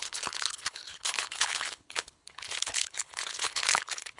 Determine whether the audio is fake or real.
fake